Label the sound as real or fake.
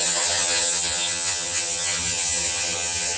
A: fake